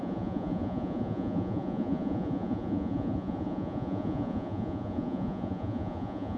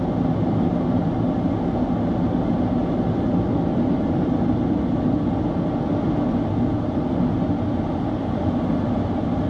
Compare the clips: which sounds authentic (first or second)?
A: second